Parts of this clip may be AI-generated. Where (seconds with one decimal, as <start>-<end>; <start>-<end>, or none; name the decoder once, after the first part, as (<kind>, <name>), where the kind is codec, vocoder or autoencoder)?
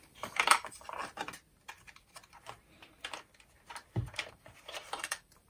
0.0-1.0 (vocoder, BigVGAN v2); 4.3-5.5